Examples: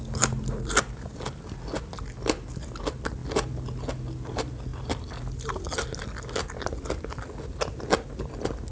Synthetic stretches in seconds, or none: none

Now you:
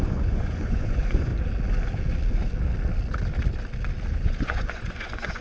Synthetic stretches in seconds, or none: 0.0-1.3 (vocoder, Vocos); 4.1-5.4

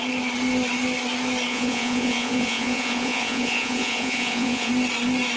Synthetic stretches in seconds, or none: 1.5-4.7 (vocoder, Vocos)

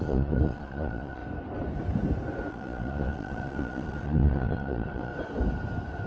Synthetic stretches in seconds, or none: 0.0-1.2 (vocoder, Vocos); 2.5-5.1

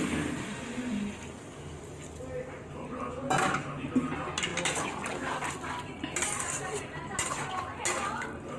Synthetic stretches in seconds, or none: none

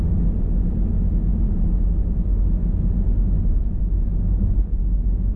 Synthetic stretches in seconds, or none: none

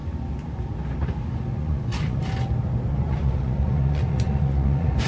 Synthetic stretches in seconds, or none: 1.5-2.2 (vocoder, Vocos); 2.9-5.1